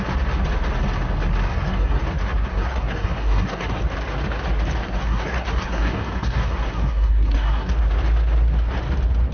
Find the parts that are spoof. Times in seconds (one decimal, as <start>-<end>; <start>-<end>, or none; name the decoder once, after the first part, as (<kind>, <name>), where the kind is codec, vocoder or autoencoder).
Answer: 1.5-2.0 (codec, SNAC); 2.5-3.8; 4.8-7.7